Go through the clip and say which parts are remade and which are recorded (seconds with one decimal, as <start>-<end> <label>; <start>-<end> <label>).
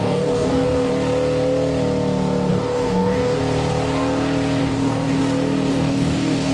0.0-0.9 remade; 0.9-2.5 recorded; 2.5-3.4 remade; 3.4-4.6 recorded; 4.6-5.2 remade; 5.2-5.7 recorded; 5.7-6.5 remade